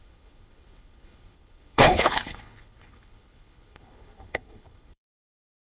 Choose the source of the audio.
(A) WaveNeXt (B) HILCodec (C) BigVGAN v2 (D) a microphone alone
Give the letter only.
B